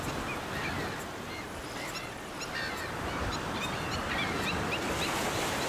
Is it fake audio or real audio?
real